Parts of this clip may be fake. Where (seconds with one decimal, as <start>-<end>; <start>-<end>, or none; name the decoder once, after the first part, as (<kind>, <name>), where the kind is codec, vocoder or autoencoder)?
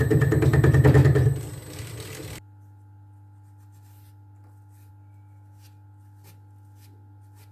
none